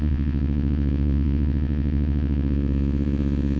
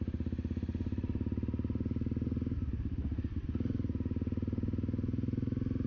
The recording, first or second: second